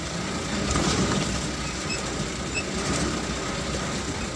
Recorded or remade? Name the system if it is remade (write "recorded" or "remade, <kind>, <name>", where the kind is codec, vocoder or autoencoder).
recorded